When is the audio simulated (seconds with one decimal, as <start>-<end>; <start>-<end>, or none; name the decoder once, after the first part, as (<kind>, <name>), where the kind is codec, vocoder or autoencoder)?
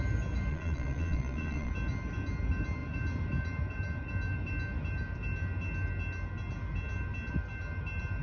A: 0.5-1.7 (vocoder, Vocos)